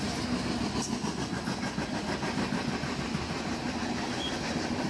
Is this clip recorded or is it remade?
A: recorded